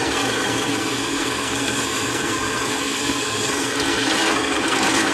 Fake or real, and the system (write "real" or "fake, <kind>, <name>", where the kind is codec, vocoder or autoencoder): fake, codec, SNAC